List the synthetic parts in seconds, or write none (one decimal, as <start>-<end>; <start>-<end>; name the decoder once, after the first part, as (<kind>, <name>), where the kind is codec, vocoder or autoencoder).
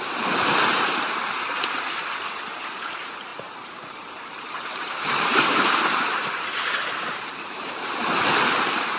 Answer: 3.3-8.1 (vocoder, BigVGAN v2)